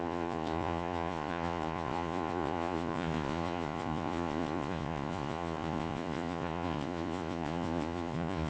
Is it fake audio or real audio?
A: fake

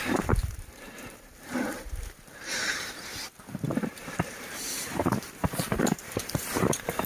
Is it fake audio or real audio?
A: fake